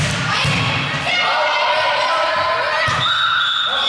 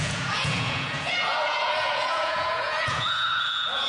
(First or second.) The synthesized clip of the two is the second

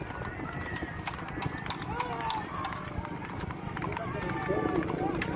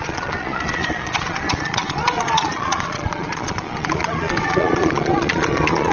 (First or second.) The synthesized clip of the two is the second